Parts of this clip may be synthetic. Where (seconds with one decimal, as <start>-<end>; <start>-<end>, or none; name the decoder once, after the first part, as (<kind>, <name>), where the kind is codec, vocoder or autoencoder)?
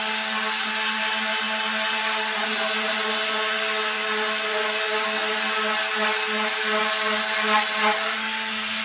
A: none